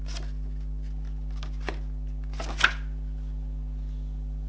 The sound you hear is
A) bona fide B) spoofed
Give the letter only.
A